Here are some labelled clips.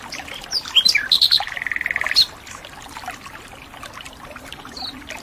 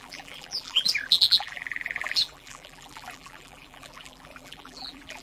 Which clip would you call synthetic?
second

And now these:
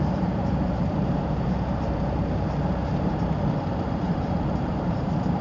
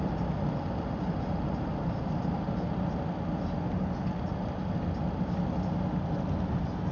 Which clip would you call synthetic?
first